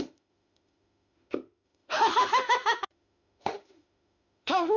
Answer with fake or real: fake